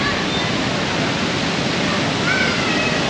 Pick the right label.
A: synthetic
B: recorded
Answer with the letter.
B